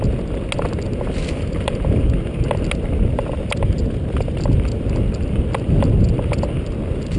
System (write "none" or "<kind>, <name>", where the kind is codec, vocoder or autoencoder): none